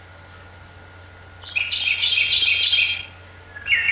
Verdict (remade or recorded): recorded